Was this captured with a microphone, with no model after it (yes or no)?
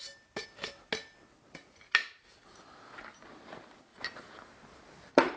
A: yes